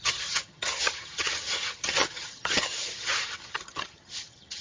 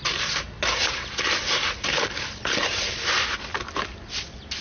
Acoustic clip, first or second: second